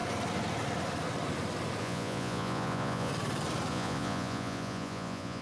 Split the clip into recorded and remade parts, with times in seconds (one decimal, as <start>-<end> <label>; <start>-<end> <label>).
0.0-1.8 recorded; 1.8-3.1 remade; 3.1-3.7 recorded; 3.7-5.4 remade